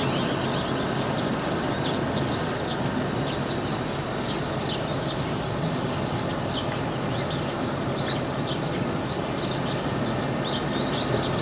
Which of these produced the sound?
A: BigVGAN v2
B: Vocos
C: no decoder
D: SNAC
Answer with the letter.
C